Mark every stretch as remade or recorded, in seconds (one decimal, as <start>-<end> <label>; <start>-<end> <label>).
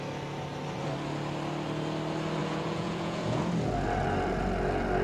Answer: 0.0-2.4 recorded; 2.4-3.4 remade; 3.4-5.0 recorded